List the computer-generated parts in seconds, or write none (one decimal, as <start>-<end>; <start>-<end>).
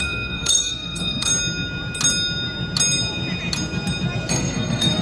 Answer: 0.0-1.3; 4.3-5.0